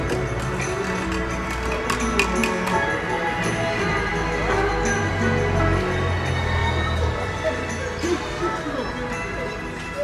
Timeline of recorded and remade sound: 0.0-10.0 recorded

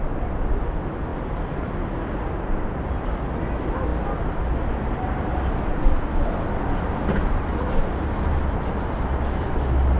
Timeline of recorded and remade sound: 0.0-10.0 recorded

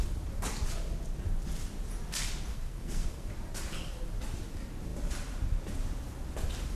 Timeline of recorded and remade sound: 0.0-2.5 recorded; 2.5-3.3 remade; 3.3-6.8 recorded

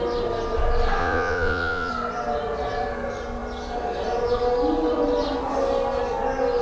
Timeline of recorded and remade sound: 0.0-1.0 recorded; 1.0-1.9 remade; 1.9-6.6 recorded

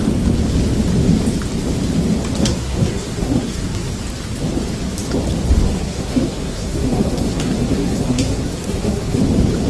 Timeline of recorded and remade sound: 0.0-2.4 recorded; 2.4-3.9 remade; 3.9-5.7 recorded; 5.7-9.2 remade; 9.2-9.7 recorded